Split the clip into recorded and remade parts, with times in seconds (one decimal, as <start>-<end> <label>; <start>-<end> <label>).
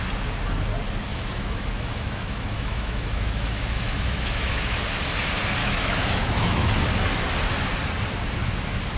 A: 0.0-1.1 recorded; 1.1-4.8 remade; 4.8-5.6 recorded; 5.6-6.7 remade; 6.7-9.0 recorded